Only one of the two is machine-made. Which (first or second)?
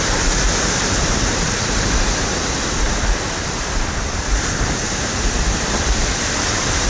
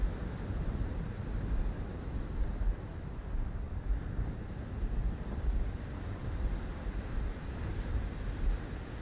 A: first